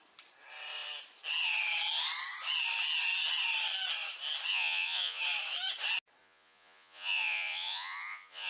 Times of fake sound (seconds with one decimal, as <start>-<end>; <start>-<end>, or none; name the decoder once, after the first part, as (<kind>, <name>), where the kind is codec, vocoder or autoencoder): 4.5-5.2 (vocoder, Vocos); 6.2-8.5